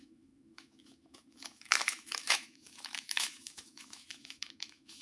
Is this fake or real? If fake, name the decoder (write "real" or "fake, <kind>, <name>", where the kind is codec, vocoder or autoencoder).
fake, autoencoder, DAC-VAE